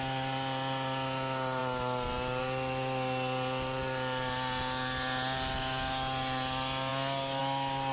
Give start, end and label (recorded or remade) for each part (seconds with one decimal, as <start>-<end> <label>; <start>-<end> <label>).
0.0-7.9 recorded